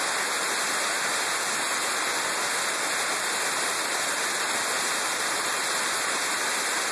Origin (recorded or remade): recorded